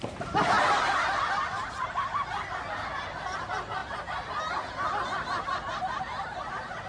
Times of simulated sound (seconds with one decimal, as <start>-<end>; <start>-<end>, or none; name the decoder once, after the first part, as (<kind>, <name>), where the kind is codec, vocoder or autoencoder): none